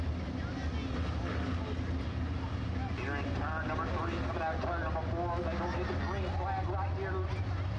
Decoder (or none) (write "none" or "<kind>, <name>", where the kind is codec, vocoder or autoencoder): none